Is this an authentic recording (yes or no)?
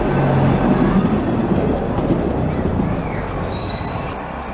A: yes